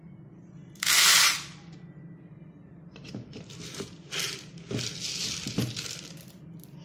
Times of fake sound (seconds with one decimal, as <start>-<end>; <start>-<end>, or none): none